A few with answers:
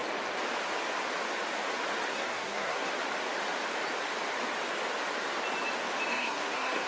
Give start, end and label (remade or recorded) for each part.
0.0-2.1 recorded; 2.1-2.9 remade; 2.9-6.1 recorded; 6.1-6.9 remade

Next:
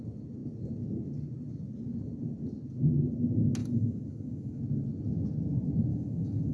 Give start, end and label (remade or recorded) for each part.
0.0-3.6 recorded; 3.6-4.6 remade; 4.6-5.9 recorded; 5.9-6.5 remade

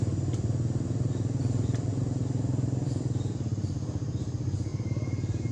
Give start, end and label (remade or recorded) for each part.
0.0-1.4 recorded; 1.4-2.0 remade; 2.0-5.5 recorded

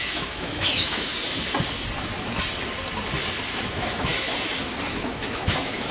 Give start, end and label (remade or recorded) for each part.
0.0-1.1 remade; 1.1-3.5 recorded; 3.5-4.1 remade; 4.1-4.9 recorded; 4.9-5.9 remade

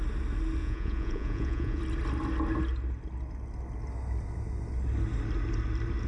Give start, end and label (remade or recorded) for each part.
0.0-0.6 recorded; 0.6-1.8 remade; 1.8-6.1 recorded

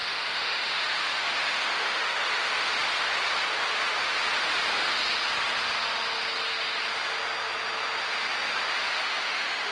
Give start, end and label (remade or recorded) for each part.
0.0-2.2 remade; 2.2-8.8 recorded; 8.8-9.7 remade